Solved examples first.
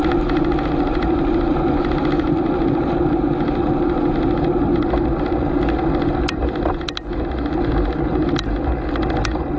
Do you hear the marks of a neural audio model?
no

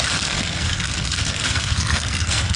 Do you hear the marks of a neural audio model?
yes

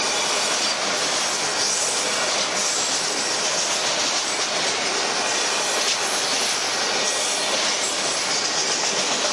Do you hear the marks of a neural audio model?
no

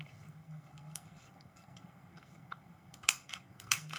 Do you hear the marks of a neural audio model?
yes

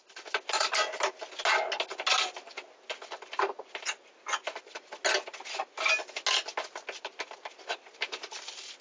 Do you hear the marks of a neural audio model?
no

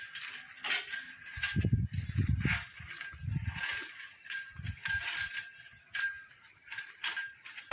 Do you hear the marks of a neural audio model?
no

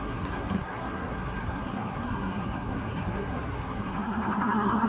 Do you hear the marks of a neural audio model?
yes